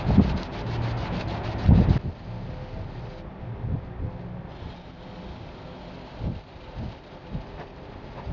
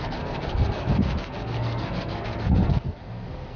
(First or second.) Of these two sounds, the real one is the first